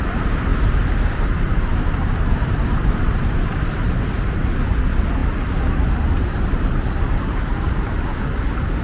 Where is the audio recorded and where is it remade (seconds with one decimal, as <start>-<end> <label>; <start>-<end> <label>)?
0.0-0.5 recorded; 0.5-4.8 remade; 4.8-8.8 recorded